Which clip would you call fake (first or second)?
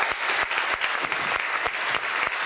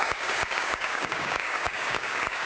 second